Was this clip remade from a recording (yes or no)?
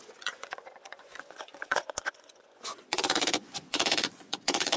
yes